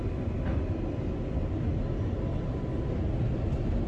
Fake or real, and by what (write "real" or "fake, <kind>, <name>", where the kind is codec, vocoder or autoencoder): real